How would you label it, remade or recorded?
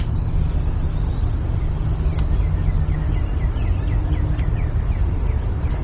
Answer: recorded